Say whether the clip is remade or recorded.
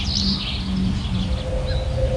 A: recorded